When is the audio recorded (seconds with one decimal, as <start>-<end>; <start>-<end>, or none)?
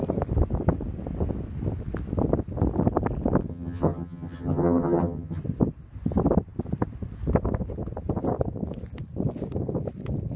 0.0-3.5; 5.4-10.4